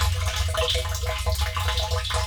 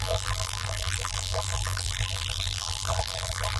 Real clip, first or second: first